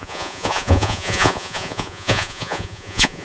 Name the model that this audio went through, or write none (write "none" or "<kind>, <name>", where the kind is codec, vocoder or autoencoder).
vocoder, Vocos